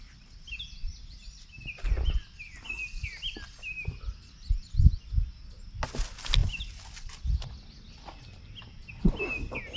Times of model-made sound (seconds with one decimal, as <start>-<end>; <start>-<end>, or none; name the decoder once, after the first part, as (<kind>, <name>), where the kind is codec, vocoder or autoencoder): none